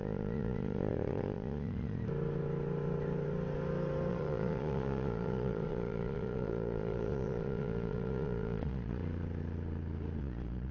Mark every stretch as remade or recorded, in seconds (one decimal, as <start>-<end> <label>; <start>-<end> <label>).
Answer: 0.0-2.0 remade; 2.0-4.1 recorded; 4.1-9.0 remade; 9.0-10.2 recorded; 10.2-10.7 remade